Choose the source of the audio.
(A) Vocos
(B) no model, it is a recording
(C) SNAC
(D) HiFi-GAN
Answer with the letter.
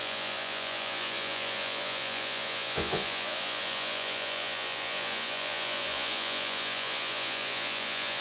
A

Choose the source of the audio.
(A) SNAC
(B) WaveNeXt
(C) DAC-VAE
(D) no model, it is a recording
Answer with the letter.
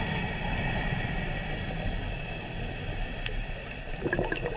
D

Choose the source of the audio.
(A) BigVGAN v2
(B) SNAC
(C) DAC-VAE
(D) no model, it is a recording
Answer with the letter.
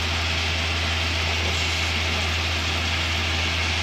D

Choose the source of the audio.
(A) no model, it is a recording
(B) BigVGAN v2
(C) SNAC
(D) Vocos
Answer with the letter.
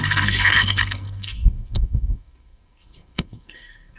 C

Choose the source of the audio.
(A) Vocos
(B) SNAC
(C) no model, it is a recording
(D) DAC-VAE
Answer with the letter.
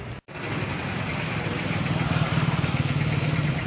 C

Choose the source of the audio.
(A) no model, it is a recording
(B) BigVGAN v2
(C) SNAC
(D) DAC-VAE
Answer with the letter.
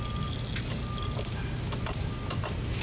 A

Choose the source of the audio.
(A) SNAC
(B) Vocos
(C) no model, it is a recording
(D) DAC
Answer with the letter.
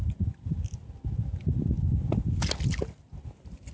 C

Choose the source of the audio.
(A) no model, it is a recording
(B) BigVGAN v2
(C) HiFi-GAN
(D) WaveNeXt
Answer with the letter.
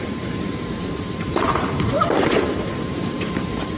B